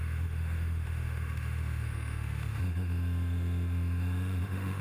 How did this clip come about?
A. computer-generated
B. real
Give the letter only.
A